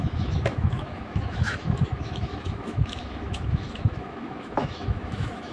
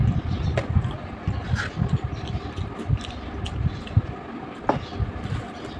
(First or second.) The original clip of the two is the second